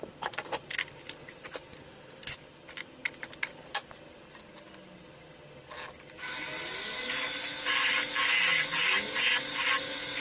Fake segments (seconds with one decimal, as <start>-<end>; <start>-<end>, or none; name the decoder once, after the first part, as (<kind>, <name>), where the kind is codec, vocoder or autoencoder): none